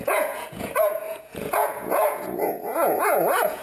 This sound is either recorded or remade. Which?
remade